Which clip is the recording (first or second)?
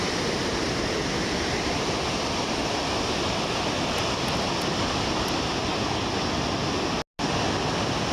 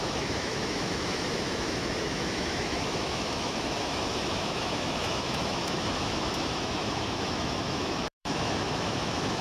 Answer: first